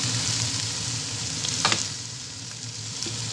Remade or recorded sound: recorded